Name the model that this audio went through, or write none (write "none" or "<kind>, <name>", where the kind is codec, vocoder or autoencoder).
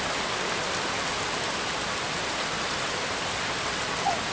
none